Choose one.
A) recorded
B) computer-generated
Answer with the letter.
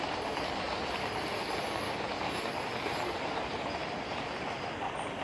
A